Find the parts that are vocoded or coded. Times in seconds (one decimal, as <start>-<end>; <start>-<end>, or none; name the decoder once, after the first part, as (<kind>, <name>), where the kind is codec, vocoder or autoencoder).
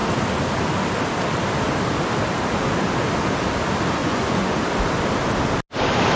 4.0-4.6 (vocoder, Vocos)